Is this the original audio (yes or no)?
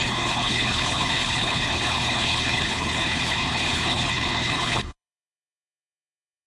no